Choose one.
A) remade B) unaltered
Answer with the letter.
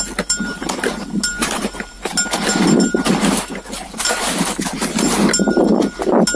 B